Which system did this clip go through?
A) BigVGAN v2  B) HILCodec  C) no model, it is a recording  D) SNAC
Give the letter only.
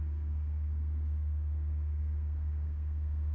D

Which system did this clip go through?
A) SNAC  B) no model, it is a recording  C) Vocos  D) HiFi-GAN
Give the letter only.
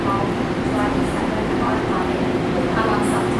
B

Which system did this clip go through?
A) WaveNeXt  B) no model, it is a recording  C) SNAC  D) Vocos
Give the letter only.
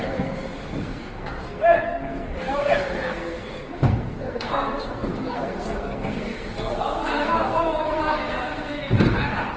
C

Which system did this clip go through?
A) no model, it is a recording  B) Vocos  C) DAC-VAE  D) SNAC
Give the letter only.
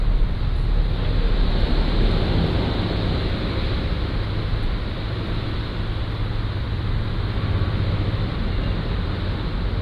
A